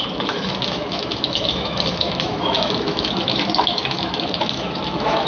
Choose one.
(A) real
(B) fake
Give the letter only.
B